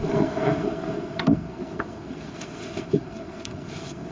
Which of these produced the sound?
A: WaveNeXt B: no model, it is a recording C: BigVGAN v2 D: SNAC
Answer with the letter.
D